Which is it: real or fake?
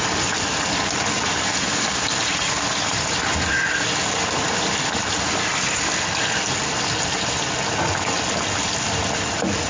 real